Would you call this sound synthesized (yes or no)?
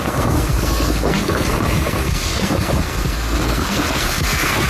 yes